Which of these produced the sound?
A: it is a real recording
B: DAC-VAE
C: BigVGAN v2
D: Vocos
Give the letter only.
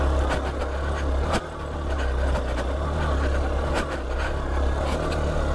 A